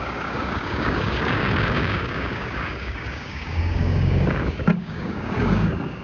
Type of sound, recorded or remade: remade